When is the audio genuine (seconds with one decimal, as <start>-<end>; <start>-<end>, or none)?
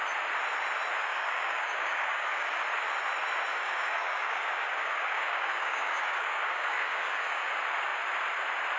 0.0-1.1; 2.6-3.5; 7.5-8.8